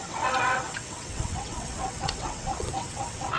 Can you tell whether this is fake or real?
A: fake